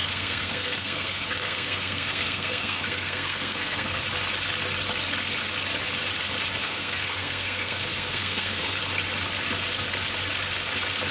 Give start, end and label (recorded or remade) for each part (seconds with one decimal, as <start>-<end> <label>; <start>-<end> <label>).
0.0-4.0 remade; 4.0-6.6 recorded; 6.6-8.8 remade; 8.8-11.1 recorded